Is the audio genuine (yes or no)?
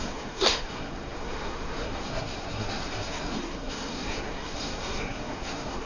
no